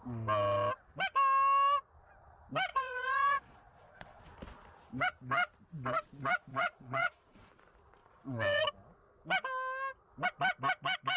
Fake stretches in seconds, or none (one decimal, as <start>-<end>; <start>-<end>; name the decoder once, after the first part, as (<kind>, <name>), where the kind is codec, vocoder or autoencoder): 2.7-4.2 (vocoder, Vocos); 6.5-7.5; 8.0-8.6